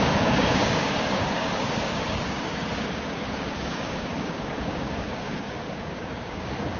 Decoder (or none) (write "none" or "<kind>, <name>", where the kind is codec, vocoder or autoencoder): codec, DAC